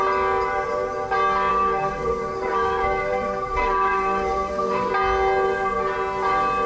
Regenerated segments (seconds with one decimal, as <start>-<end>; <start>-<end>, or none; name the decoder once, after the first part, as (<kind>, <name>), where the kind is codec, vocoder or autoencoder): 1.5-4.9 (codec, SNAC)